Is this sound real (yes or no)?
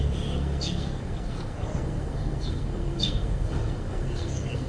no